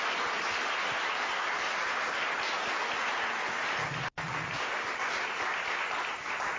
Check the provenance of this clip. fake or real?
real